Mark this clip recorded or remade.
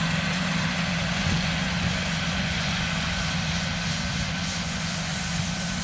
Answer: remade